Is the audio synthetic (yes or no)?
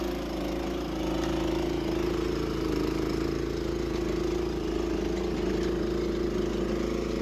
no